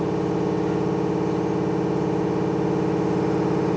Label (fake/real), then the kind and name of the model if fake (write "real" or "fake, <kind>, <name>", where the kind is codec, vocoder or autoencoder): real